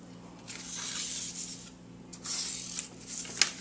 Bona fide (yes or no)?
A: yes